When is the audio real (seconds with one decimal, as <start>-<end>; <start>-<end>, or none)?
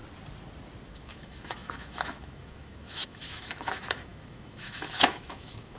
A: 0.0-0.9